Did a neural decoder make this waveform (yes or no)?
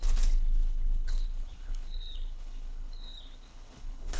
yes